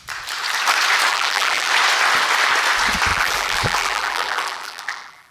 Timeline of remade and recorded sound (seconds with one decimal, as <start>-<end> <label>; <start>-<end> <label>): 0.0-1.1 recorded; 1.1-1.7 remade; 1.7-3.1 recorded; 3.1-5.3 remade